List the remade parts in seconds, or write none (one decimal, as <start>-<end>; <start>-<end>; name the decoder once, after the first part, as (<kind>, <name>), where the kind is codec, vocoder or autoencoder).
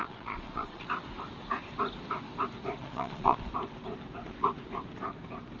0.0-0.9 (vocoder, Vocos); 2.8-3.5